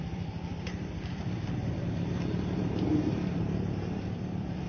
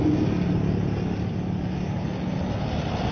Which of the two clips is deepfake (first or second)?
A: first